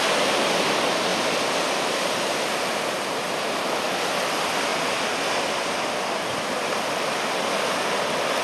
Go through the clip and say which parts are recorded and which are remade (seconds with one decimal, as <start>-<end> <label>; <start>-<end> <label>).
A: 0.0-8.4 recorded